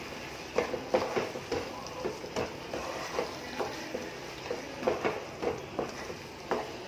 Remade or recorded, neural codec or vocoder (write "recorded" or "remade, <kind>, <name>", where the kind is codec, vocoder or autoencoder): recorded